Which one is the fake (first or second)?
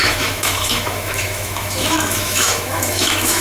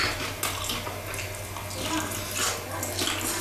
first